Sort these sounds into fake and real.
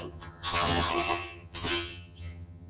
fake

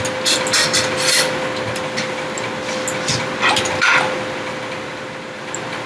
real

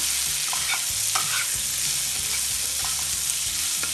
real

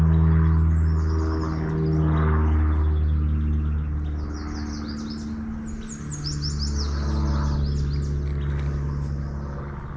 real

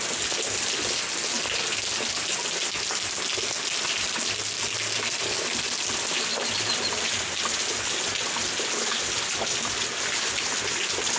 real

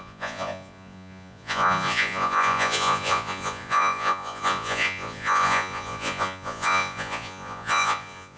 fake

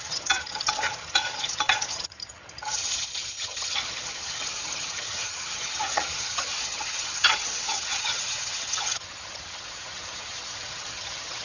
fake